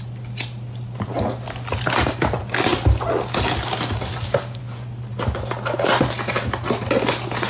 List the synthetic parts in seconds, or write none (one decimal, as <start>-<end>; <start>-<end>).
none